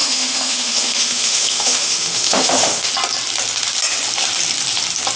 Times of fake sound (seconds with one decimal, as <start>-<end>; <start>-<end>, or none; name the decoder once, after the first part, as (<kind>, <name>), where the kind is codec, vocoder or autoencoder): 0.0-2.9 (autoencoder, DAC-VAE)